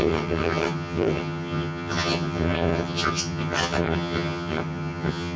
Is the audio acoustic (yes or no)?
no